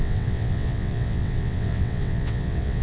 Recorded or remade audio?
remade